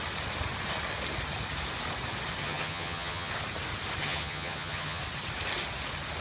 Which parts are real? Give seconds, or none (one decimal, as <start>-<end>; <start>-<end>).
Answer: 0.0-2.4; 3.3-4.0; 5.0-6.2

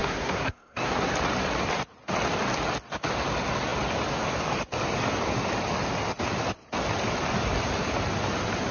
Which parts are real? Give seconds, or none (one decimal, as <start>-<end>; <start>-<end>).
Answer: 1.1-8.7

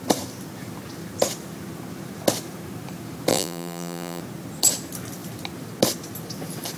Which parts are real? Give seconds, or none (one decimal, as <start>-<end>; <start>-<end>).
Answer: 0.0-3.3; 4.2-6.8

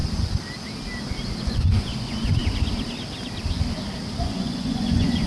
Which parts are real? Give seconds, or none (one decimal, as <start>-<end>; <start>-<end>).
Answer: 0.0-1.4; 2.4-4.2

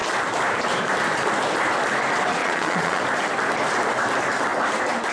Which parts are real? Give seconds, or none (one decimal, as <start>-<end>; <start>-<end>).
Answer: 0.0-2.4; 3.0-5.1